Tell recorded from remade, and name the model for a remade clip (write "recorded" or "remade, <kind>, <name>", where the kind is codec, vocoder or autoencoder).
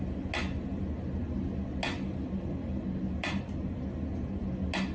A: recorded